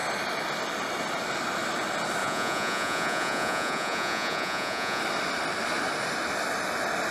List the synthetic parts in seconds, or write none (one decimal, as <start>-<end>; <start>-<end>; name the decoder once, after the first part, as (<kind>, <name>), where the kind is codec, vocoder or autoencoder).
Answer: 2.2-5.0 (vocoder, Vocos)